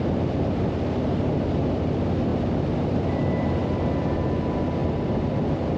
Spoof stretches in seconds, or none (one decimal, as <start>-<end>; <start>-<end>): 0.0-2.3; 2.9-5.8